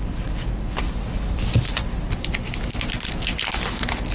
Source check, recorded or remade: recorded